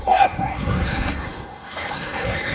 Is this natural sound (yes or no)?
no